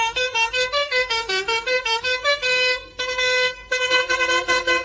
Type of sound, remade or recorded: remade